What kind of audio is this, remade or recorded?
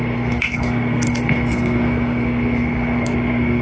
remade